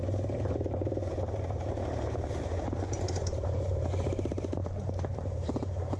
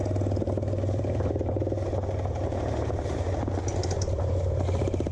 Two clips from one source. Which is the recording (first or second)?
second